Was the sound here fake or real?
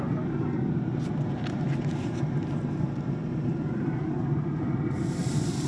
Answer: real